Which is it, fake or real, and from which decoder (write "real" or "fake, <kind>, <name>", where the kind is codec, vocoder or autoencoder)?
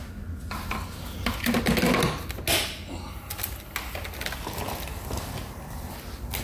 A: real